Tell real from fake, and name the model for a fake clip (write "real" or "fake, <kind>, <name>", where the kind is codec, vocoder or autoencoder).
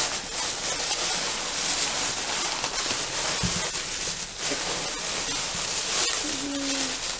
real